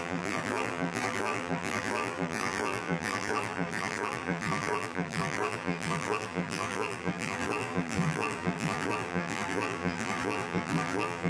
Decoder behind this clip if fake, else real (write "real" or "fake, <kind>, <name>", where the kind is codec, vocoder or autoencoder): fake, vocoder, BigVGAN v2